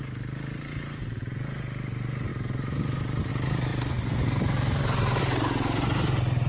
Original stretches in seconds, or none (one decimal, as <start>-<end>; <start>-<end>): none